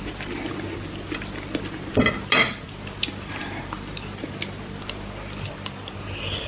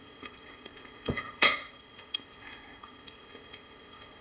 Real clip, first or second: first